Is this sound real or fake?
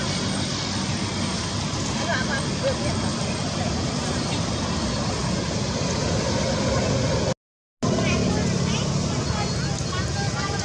real